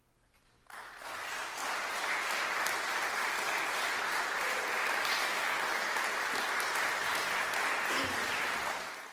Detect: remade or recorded recorded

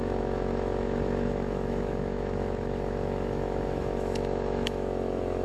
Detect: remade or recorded remade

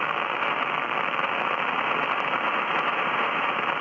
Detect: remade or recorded recorded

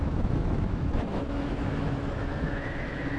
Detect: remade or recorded remade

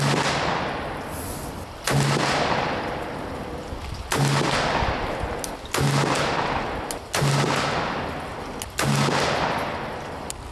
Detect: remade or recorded recorded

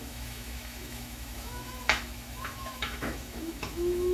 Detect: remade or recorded remade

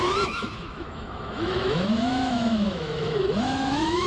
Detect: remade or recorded remade